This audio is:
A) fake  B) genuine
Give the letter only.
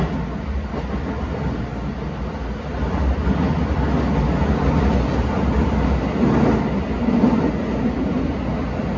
B